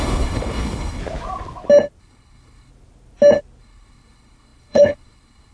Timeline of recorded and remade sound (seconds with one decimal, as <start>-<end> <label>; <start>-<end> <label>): 0.0-1.0 remade; 1.0-2.0 recorded; 2.0-2.7 remade; 2.7-3.6 recorded; 3.6-5.5 remade